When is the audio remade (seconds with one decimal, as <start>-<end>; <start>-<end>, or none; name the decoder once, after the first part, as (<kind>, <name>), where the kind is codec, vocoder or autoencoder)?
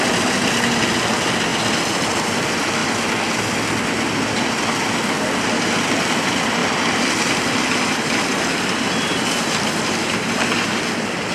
0.0-1.5 (vocoder, BigVGAN v2); 2.0-2.8; 5.4-11.3